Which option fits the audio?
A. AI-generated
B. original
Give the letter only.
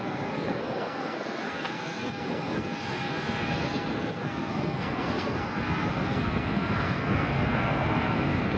A